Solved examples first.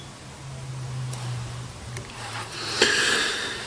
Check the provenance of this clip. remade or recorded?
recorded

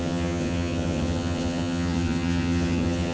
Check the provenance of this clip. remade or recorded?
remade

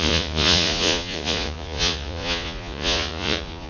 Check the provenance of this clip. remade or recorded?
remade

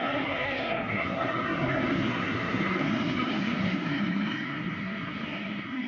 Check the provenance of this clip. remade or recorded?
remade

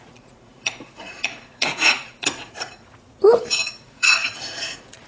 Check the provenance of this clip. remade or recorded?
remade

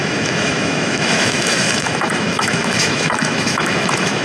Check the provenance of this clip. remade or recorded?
remade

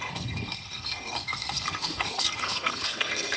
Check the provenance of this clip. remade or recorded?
remade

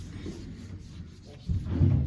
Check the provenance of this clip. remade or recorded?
recorded